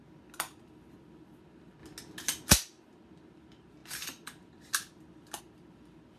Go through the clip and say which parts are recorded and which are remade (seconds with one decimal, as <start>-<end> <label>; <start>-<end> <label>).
0.0-6.2 recorded